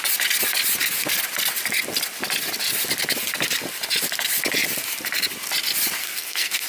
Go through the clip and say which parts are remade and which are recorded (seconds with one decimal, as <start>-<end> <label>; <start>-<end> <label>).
0.0-6.0 recorded; 6.0-6.7 remade